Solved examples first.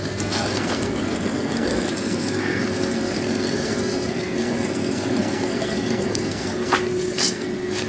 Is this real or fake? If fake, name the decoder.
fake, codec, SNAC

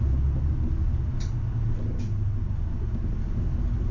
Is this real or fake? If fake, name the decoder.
real